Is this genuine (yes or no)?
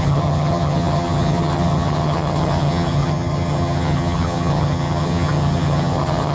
no